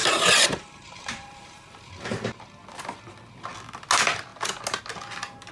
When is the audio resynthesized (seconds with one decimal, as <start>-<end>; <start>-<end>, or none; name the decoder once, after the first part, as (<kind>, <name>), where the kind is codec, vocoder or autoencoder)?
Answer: 0.0-1.9 (vocoder, BigVGAN v2)